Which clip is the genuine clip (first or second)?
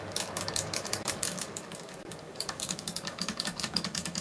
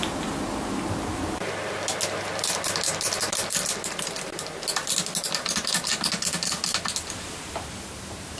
second